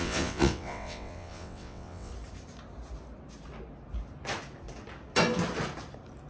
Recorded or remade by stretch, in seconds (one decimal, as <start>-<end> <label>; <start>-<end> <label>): 0.0-2.1 remade; 2.1-6.3 recorded